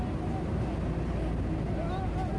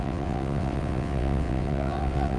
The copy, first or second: second